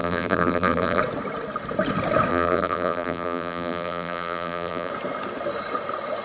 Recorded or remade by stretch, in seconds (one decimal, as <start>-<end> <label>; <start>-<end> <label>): 0.0-1.0 remade; 1.0-2.3 recorded; 2.3-4.9 remade; 4.9-6.2 recorded